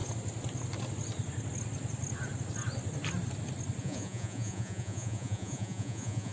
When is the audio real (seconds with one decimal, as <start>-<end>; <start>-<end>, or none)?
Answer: 0.0-3.8